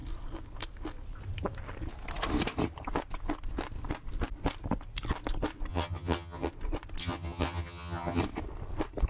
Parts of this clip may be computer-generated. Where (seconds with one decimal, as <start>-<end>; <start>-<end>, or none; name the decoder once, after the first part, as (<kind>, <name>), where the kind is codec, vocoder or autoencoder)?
5.7-6.5 (vocoder, HiFi-GAN); 7.0-8.2